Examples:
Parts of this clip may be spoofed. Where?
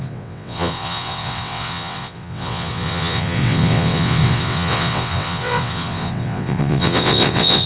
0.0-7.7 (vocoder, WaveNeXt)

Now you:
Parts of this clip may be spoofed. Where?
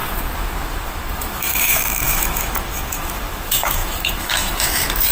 0.0-5.1 (autoencoder, DAC-VAE)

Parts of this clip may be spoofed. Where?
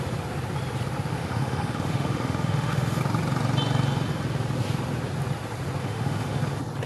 1.1-3.0 (autoencoder, DAC-VAE); 5.8-6.4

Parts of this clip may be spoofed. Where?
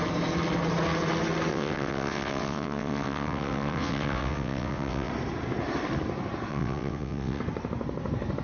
1.5-5.1 (vocoder, WaveNeXt); 6.5-7.4